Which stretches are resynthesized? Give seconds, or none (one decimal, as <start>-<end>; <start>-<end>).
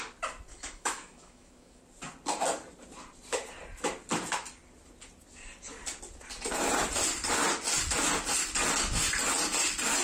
0.5-1.8